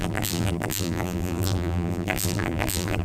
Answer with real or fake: fake